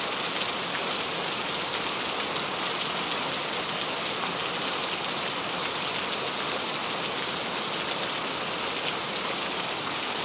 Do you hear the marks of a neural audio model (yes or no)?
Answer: no